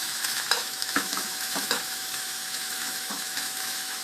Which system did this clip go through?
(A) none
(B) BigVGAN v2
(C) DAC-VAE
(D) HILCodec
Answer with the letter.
C